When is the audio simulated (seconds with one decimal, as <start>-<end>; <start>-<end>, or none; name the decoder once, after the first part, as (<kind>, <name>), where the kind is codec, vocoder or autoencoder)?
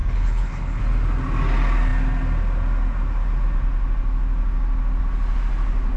0.0-0.8 (codec, HILCodec)